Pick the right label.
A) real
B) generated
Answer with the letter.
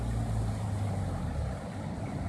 A